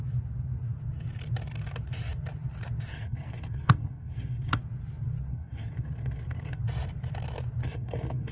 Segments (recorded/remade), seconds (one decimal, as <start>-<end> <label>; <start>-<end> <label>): 0.0-2.9 recorded; 2.9-4.6 remade; 4.6-5.3 recorded; 5.3-6.6 remade; 6.6-7.6 recorded; 7.6-8.3 remade